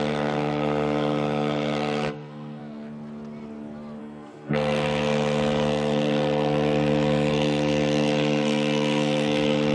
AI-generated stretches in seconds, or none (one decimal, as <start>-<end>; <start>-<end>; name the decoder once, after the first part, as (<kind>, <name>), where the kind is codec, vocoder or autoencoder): 0.0-2.6 (codec, SNAC); 4.0-9.7